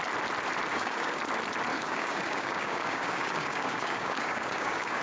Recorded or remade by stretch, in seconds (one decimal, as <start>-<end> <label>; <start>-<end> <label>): 0.0-0.7 recorded; 0.7-1.2 remade; 1.2-1.7 recorded; 1.7-5.0 remade